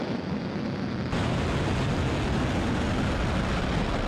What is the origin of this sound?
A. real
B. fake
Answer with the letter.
A